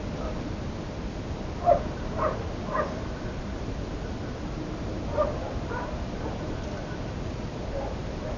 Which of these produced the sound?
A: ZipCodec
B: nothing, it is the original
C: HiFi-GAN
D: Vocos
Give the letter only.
B